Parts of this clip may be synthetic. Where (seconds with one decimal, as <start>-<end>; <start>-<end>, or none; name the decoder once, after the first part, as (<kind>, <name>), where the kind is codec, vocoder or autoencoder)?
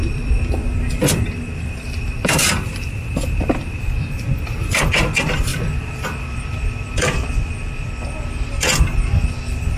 0.0-3.8 (vocoder, BigVGAN v2); 5.5-7.9